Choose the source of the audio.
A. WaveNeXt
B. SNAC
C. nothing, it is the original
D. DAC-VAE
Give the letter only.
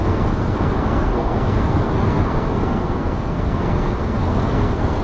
B